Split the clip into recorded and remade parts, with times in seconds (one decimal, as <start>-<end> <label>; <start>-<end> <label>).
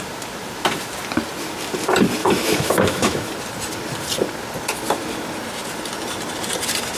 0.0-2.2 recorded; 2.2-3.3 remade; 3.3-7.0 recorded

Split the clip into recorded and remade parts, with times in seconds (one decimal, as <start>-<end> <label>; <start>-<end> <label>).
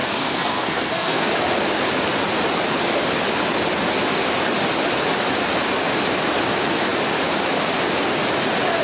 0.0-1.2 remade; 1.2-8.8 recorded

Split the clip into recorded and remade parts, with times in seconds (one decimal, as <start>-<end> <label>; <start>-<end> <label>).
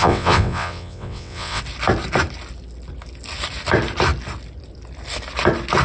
0.0-1.6 remade; 1.6-5.8 recorded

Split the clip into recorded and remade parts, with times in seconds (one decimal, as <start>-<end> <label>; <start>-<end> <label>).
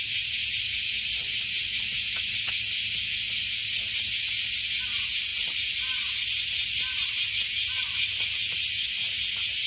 0.0-9.7 recorded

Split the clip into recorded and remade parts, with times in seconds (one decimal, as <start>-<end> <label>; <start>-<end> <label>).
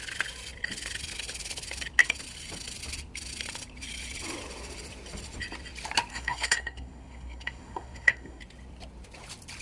0.0-6.1 recorded; 6.1-8.4 remade; 8.4-9.6 recorded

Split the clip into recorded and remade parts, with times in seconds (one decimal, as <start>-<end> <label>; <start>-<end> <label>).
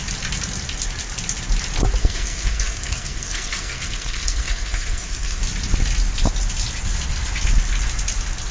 0.0-2.0 recorded; 2.0-5.4 remade; 5.4-8.5 recorded